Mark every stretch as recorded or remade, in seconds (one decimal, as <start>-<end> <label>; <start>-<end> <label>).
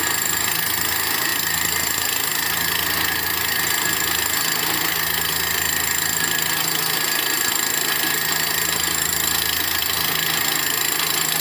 0.0-1.3 recorded; 1.3-2.3 remade; 2.3-11.4 recorded